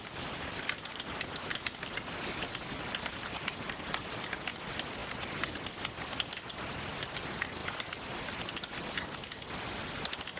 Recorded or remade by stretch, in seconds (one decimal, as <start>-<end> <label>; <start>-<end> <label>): 0.0-10.4 recorded